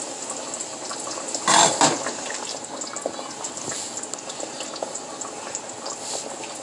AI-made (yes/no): no